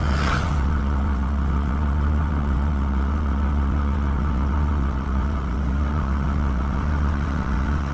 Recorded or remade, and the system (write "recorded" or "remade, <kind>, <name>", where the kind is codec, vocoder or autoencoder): remade, vocoder, WaveNeXt